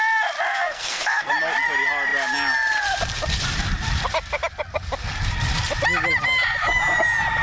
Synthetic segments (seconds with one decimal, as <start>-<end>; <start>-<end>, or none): 0.5-1.3